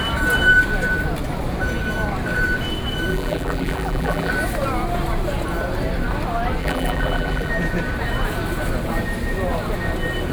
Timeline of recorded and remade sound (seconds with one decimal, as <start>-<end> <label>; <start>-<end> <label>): 0.0-3.1 recorded; 3.1-4.3 remade; 4.3-6.6 recorded; 6.6-7.5 remade; 7.5-10.3 recorded